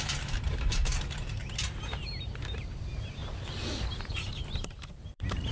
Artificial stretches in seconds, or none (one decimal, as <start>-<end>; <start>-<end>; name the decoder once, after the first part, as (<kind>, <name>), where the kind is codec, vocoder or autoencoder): 0.0-3.2 (vocoder, BigVGAN v2); 4.6-5.5